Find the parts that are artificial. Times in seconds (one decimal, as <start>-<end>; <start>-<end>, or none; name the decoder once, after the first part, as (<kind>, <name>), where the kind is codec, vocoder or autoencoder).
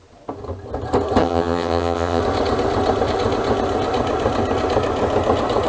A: 1.2-2.2 (vocoder, HiFi-GAN)